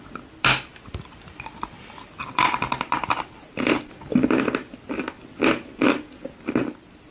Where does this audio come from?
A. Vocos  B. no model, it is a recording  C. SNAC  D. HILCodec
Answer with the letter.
B